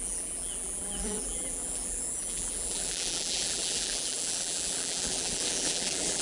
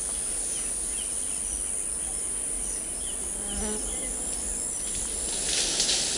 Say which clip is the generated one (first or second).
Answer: first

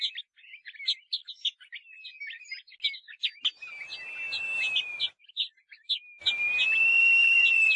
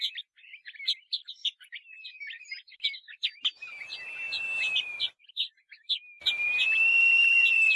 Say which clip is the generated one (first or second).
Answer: second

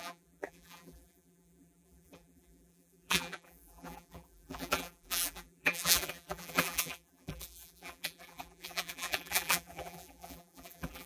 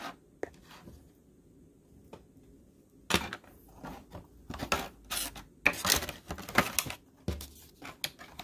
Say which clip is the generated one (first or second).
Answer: first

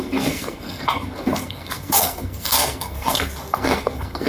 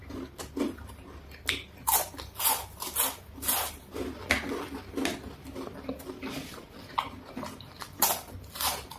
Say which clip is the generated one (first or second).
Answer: first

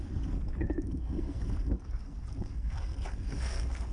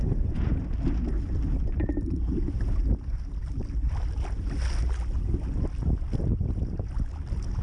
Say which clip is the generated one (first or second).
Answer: first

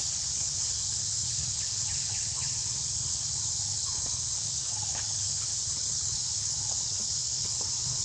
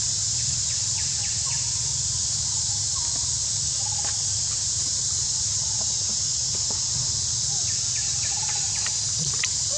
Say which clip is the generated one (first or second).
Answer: first